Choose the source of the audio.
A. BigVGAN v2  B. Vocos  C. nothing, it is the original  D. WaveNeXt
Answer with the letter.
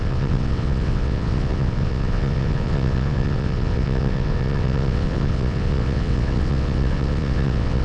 D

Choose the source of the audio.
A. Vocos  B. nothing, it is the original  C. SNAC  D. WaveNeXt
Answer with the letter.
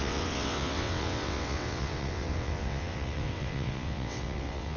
D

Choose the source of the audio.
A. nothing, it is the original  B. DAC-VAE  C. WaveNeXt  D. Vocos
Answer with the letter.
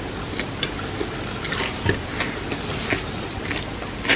A